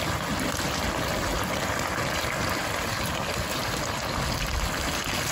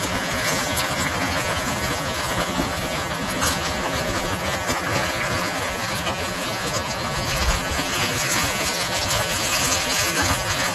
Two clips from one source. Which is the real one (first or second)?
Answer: first